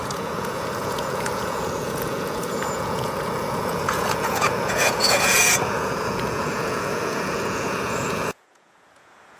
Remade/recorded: remade